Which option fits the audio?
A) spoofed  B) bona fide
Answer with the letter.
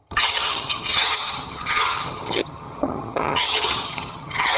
A